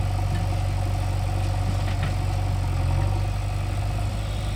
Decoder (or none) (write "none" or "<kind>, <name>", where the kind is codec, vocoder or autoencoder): none